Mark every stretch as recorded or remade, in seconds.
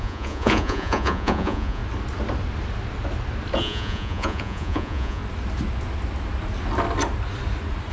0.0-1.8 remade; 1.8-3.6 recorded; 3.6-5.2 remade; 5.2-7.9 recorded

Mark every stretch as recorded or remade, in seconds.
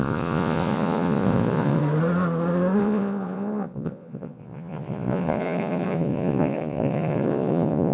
0.0-1.8 remade; 1.8-2.8 recorded; 2.8-7.9 remade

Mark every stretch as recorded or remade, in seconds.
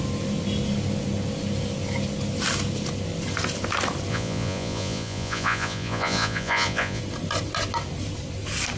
0.0-4.1 recorded; 4.1-7.0 remade; 7.0-8.8 recorded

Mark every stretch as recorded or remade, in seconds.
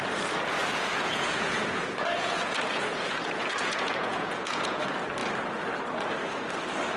0.0-0.6 recorded; 0.6-4.8 remade; 4.8-7.0 recorded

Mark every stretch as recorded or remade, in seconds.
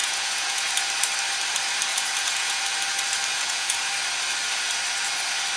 0.0-0.7 remade; 0.7-1.9 recorded; 1.9-2.6 remade; 2.6-3.3 recorded; 3.3-3.9 remade; 3.9-5.6 recorded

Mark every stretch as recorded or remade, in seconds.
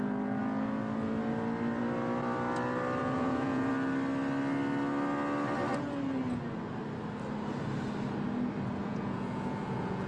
0.0-3.0 recorded; 3.0-3.7 remade; 3.7-8.8 recorded; 8.8-10.1 remade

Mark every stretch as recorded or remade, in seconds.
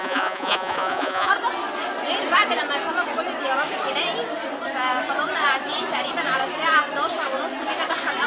0.0-1.3 remade; 1.3-8.3 recorded